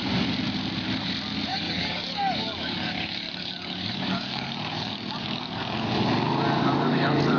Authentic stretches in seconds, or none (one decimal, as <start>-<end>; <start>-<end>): 0.0-1.5; 5.9-6.6